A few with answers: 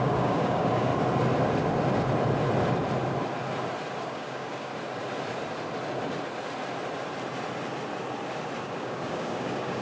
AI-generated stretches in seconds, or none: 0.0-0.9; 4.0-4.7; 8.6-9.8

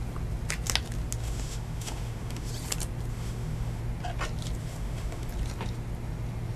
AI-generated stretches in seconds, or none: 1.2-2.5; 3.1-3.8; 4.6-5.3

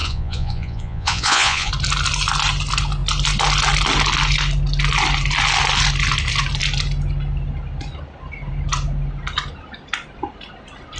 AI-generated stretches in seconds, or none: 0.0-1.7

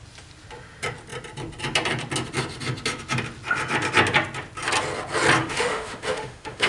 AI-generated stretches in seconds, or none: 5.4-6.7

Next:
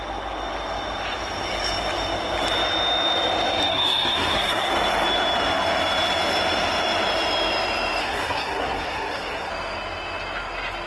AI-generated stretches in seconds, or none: 3.7-4.7; 8.0-9.5

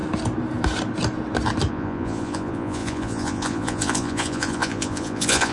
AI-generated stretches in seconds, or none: 1.7-5.5

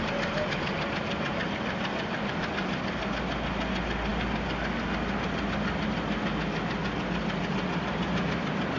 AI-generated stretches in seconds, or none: none